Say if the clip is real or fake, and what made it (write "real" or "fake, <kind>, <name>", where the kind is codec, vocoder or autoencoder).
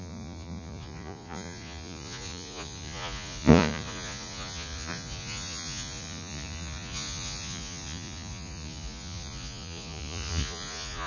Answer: fake, vocoder, Vocos